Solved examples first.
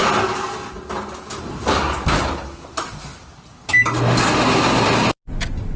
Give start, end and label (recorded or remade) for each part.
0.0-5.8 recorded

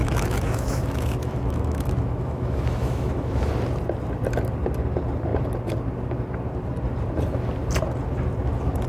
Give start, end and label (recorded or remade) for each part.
0.0-3.5 remade; 3.5-8.9 recorded

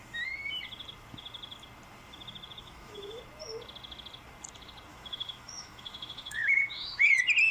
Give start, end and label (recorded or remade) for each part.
0.0-2.6 recorded; 2.6-3.2 remade; 3.2-4.9 recorded; 4.9-7.1 remade; 7.1-7.5 recorded

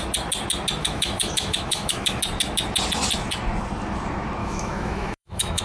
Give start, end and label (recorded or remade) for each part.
0.0-0.8 recorded; 0.8-2.2 remade; 2.2-4.4 recorded; 4.4-5.6 remade